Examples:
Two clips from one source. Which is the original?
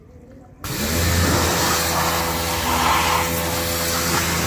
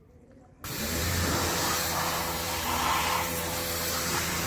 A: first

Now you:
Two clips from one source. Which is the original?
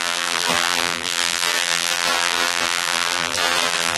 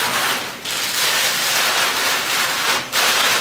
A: second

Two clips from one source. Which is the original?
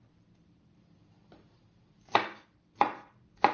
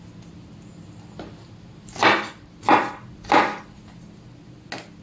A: second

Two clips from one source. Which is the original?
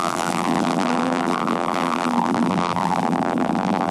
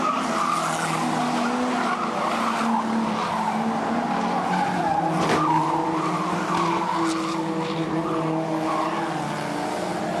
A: second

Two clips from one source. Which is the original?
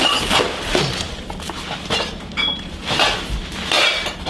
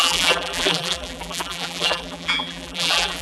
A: first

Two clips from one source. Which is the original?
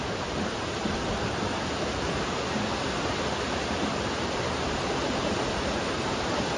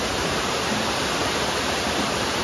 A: first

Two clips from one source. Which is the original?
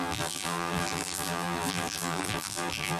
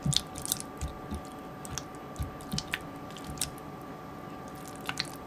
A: second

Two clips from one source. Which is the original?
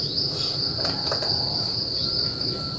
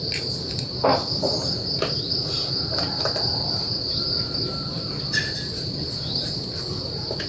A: first